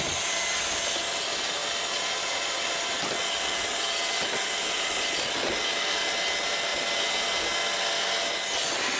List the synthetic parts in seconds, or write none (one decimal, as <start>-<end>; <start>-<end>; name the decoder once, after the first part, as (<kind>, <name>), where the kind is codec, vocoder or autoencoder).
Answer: none